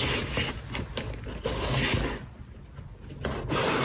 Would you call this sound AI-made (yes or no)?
no